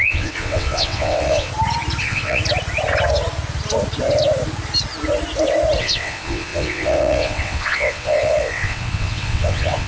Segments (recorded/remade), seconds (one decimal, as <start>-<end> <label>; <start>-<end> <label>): 0.0-1.5 remade; 1.5-2.0 recorded; 2.0-2.4 remade; 2.4-5.8 recorded; 5.8-9.9 remade